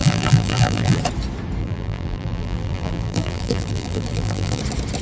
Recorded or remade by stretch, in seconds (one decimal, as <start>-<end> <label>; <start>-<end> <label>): 0.0-1.0 remade; 1.0-1.6 recorded; 1.6-4.6 remade; 4.6-5.0 recorded